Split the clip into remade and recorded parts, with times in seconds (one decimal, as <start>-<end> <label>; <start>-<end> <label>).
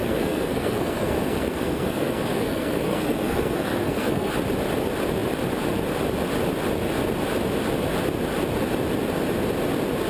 0.0-4.3 remade; 4.3-10.1 recorded